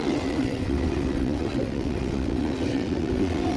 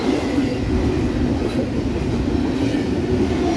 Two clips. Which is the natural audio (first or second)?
second